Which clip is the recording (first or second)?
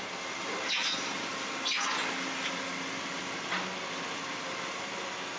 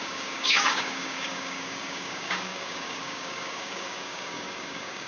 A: first